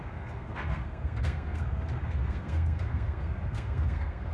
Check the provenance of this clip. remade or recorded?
remade